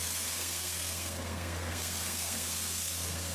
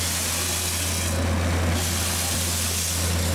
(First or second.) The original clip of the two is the second